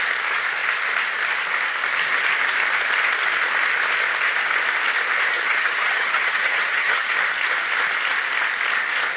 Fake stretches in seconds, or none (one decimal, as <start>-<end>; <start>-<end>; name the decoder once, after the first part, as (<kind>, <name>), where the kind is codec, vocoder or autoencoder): 5.3-7.1 (vocoder, HiFi-GAN)